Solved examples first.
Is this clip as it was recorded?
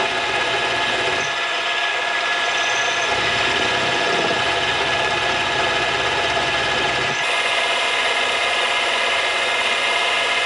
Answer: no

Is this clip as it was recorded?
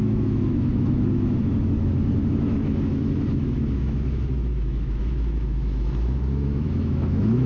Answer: no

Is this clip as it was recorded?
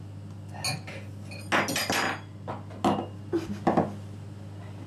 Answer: yes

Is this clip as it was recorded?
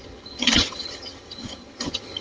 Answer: no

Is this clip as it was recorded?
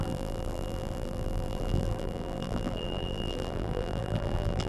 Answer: no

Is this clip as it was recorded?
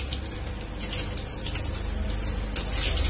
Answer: yes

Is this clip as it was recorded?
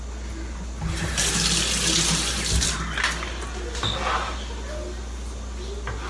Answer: yes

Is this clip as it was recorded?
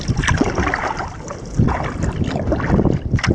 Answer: yes